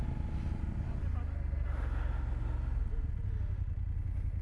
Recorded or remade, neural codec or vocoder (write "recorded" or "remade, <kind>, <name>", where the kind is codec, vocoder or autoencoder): recorded